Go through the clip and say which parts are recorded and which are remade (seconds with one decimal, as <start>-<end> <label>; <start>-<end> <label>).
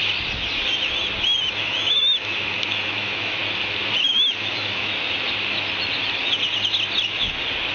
0.0-1.5 recorded; 1.5-3.4 remade; 3.4-4.0 recorded; 4.0-4.9 remade; 4.9-7.7 recorded